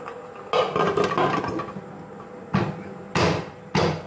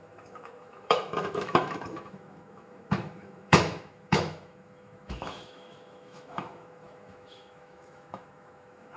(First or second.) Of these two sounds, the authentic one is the first